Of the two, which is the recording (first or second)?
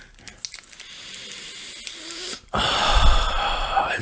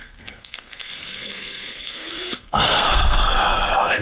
first